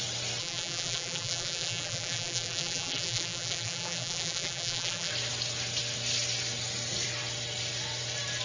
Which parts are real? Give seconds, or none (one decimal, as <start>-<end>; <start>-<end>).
0.0-0.4; 5.1-8.4